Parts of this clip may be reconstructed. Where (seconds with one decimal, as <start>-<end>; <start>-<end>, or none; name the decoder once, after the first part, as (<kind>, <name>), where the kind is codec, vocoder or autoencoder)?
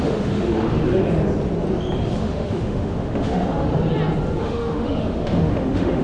0.0-0.8 (autoencoder, DAC-VAE); 2.2-3.7; 4.4-6.0